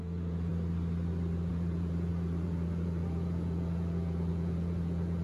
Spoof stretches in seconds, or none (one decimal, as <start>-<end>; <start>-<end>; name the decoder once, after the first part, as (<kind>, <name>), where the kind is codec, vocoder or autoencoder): 0.0-0.5 (vocoder, Vocos); 1.5-5.2